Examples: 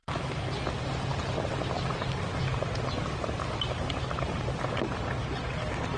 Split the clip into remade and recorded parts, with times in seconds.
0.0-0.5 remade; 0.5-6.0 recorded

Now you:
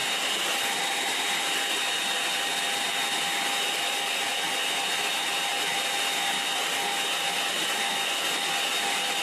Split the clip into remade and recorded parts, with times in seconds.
0.0-9.2 recorded

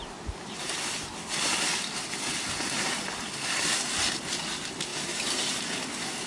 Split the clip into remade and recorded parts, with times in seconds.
0.0-6.3 recorded

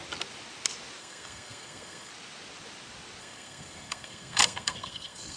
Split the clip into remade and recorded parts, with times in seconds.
0.0-1.0 recorded; 1.0-2.1 remade; 2.1-3.2 recorded; 3.2-5.4 remade

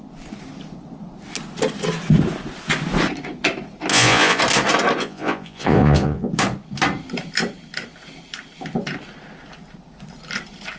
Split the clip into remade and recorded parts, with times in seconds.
0.0-3.9 recorded; 3.9-4.4 remade; 4.4-5.0 recorded; 5.0-6.3 remade; 6.3-10.8 recorded

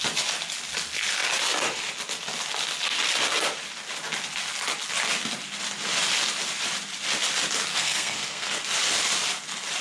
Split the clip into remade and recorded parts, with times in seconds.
0.0-7.7 recorded; 7.7-8.6 remade; 8.6-9.8 recorded

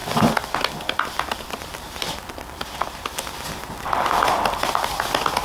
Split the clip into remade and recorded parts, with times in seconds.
0.0-2.5 remade; 2.5-5.4 recorded

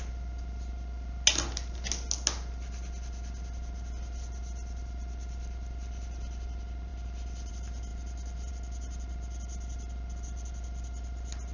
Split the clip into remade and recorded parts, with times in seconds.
0.0-11.5 recorded